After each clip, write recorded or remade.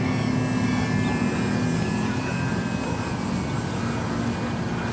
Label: recorded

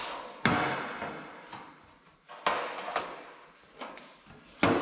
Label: recorded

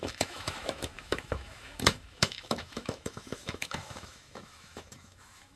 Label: remade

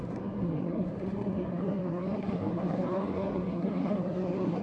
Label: remade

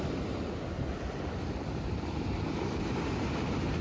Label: recorded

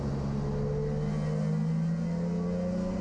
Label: recorded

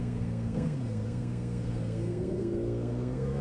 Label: remade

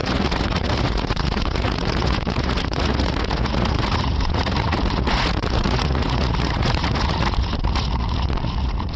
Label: remade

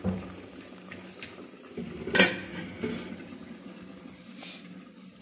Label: recorded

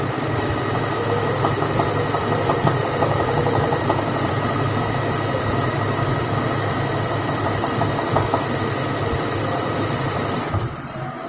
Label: remade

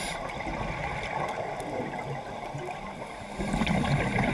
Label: recorded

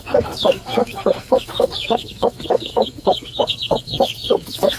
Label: remade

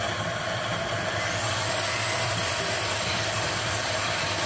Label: remade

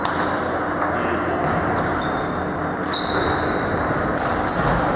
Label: recorded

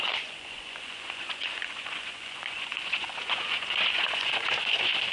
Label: remade